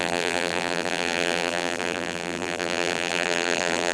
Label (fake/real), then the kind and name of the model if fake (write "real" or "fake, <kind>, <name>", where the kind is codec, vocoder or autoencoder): fake, vocoder, BigVGAN v2